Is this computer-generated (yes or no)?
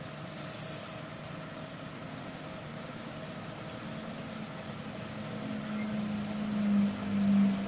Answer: no